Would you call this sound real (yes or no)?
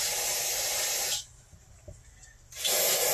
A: yes